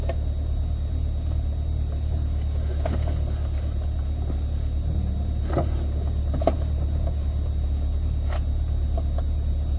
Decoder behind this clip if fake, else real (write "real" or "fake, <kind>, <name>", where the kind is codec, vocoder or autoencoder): real